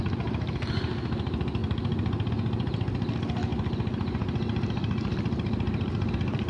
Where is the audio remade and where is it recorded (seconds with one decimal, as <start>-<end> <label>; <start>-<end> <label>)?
0.0-6.5 recorded